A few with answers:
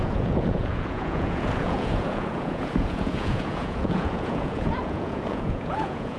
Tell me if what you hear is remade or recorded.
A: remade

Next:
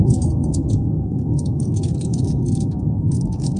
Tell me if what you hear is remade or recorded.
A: remade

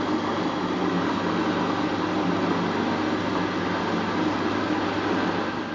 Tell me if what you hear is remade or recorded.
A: recorded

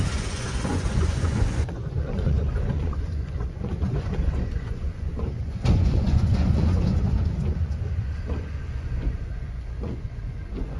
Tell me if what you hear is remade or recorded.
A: remade